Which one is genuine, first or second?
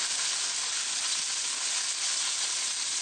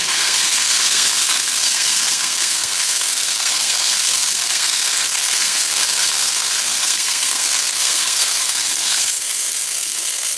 first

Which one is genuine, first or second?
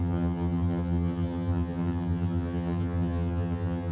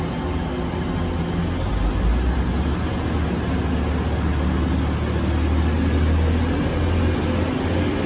second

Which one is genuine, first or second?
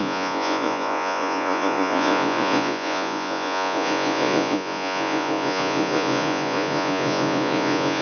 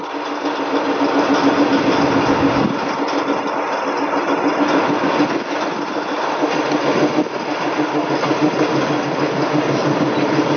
second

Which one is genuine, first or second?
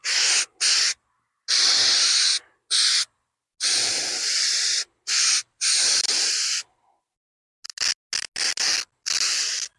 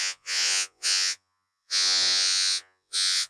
first